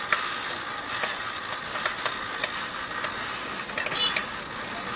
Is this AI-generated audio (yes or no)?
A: no